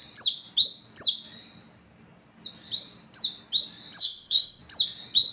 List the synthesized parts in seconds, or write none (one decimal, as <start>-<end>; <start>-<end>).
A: 4.0-4.6